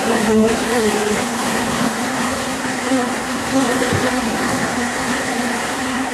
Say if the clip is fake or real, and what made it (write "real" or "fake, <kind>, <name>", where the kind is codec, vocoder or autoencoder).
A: fake, codec, SNAC